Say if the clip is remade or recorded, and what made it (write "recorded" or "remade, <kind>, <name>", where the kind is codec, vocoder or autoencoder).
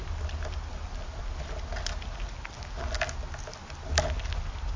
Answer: recorded